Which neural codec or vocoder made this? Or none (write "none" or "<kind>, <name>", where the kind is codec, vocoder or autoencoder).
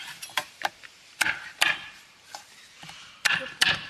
vocoder, BigVGAN v2